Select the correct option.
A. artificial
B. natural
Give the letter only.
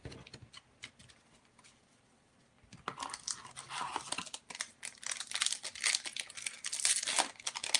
B